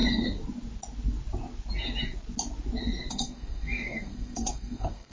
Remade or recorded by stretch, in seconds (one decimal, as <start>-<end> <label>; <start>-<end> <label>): 0.0-3.1 recorded; 3.1-5.1 remade